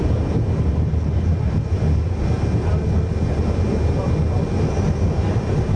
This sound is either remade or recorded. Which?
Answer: recorded